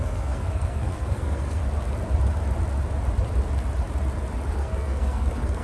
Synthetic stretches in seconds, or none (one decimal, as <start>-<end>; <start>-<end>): 0.0-1.6; 4.5-5.6